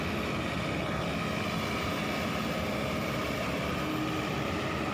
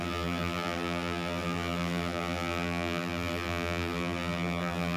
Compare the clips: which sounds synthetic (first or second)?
second